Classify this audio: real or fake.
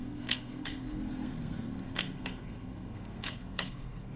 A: fake